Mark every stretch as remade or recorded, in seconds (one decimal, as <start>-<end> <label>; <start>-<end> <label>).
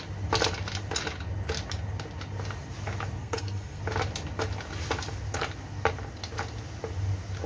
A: 0.0-3.2 recorded; 3.2-3.8 remade; 3.8-7.5 recorded